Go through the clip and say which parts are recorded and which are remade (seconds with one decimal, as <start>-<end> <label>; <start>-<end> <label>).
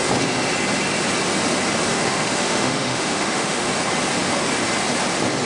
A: 0.0-1.9 recorded; 1.9-3.7 remade; 3.7-5.5 recorded